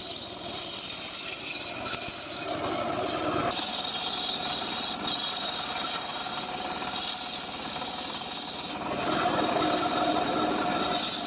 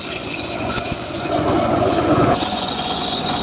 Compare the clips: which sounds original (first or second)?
first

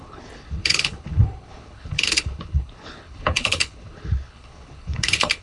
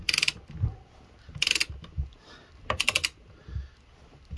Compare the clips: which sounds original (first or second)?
second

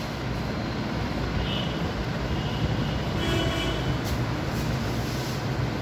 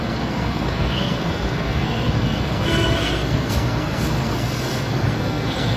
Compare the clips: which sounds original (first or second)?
first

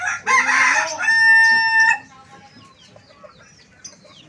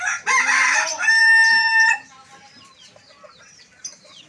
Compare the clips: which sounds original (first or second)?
first